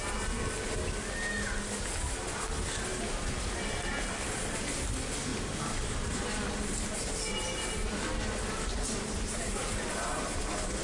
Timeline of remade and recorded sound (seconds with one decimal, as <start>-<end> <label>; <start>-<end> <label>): 0.0-2.9 recorded; 2.9-3.5 remade; 3.5-5.3 recorded; 5.3-10.4 remade; 10.4-10.8 recorded